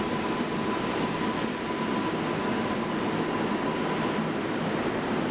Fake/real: real